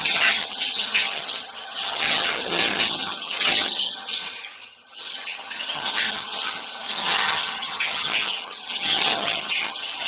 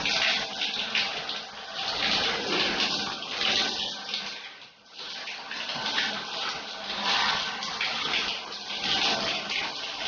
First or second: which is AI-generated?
first